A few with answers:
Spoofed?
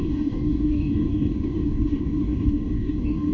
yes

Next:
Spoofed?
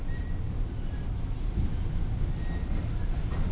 no